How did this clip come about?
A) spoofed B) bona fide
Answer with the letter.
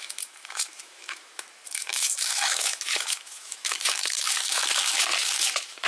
A